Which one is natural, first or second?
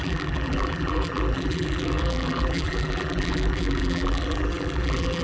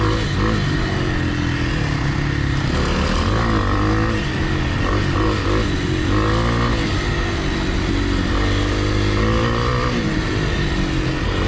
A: second